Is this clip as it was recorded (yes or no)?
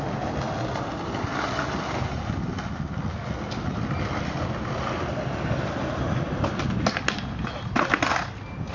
yes